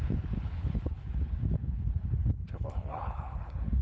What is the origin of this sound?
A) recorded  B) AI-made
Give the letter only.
B